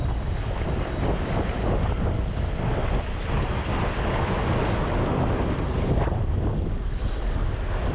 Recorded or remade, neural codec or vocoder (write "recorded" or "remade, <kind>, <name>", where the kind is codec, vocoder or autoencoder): recorded